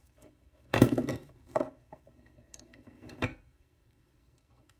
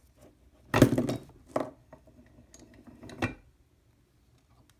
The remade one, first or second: first